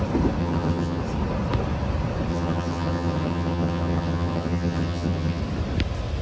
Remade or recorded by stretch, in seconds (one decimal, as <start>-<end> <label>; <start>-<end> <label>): 0.0-0.4 recorded; 0.4-1.0 remade; 1.0-2.3 recorded; 2.3-5.4 remade; 5.4-6.2 recorded